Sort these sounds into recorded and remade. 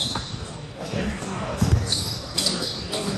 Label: remade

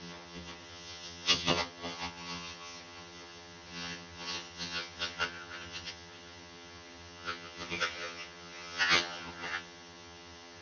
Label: remade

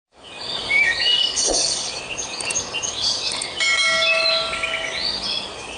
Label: remade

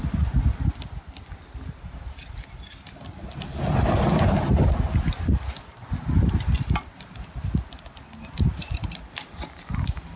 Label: recorded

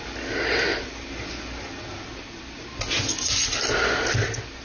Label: recorded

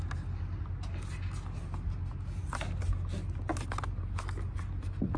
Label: recorded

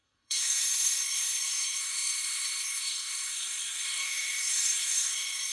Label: remade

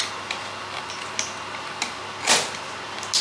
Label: recorded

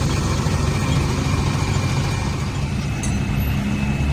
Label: recorded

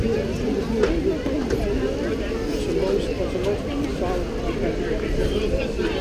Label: recorded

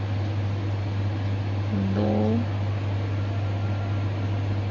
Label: recorded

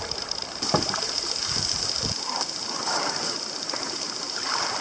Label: recorded